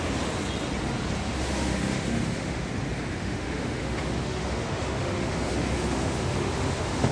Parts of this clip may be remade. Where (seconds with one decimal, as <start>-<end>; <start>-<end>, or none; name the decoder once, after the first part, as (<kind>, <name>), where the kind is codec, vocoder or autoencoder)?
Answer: 1.3-2.7 (autoencoder, DAC-VAE); 3.2-7.1